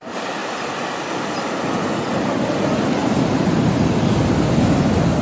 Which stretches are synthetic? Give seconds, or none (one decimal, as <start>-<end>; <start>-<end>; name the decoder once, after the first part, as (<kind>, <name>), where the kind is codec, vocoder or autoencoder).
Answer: 0.4-2.2 (vocoder, BigVGAN v2)